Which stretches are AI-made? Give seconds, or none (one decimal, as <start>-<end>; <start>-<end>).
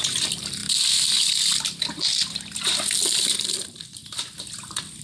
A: none